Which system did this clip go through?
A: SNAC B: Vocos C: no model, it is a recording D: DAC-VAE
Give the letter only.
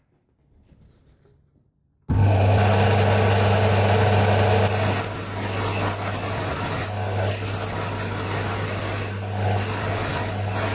C